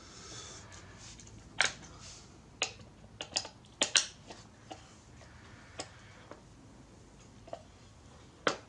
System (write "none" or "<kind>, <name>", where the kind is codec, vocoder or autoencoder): none